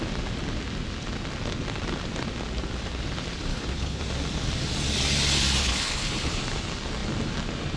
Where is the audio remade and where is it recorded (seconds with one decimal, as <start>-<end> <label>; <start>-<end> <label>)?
0.0-3.5 recorded; 3.5-4.0 remade; 4.0-5.6 recorded; 5.6-6.4 remade; 6.4-7.8 recorded